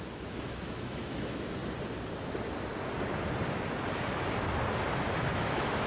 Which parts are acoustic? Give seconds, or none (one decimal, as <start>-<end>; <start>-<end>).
1.6-4.9